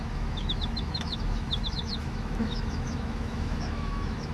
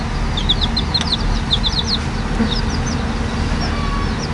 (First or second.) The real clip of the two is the second